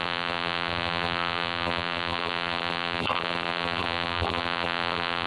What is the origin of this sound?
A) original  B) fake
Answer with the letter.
B